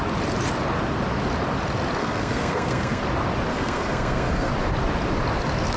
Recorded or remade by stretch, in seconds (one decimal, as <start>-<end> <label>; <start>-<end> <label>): 0.0-2.0 recorded; 2.0-3.0 remade; 3.0-3.5 recorded; 3.5-4.5 remade; 4.5-5.8 recorded